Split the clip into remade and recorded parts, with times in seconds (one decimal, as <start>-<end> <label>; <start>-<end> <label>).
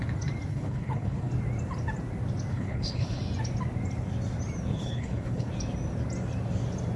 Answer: 0.0-0.5 recorded; 0.5-1.3 remade; 1.3-2.5 recorded; 2.5-3.2 remade; 3.2-4.7 recorded; 4.7-5.5 remade; 5.5-7.0 recorded